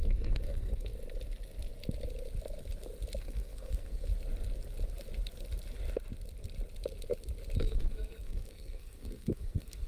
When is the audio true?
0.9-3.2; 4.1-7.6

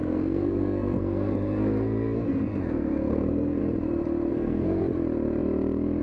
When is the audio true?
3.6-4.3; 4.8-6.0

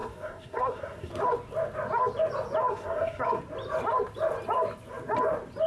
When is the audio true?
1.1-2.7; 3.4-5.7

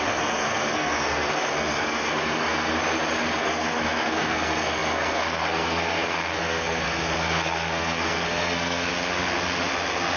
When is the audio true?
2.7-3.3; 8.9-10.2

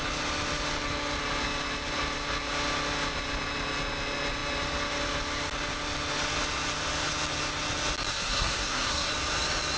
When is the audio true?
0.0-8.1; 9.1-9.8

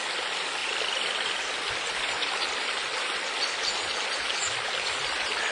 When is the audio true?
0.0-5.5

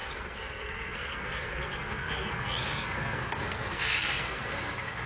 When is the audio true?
none